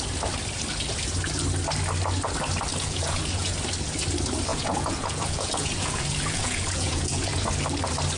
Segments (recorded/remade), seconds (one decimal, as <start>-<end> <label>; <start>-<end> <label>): 0.0-2.7 recorded; 2.7-3.5 remade; 3.5-4.5 recorded; 4.5-7.4 remade; 7.4-8.2 recorded